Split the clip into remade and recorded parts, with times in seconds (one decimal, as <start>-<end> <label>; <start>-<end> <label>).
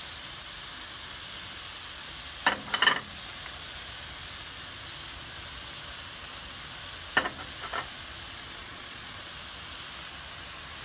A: 0.0-8.6 recorded; 8.6-9.3 remade; 9.3-10.8 recorded